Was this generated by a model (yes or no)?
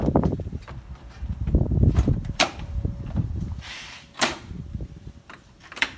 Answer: yes